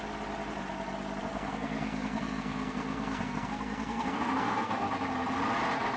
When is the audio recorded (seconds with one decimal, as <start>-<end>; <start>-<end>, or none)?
0.0-1.2; 4.8-6.0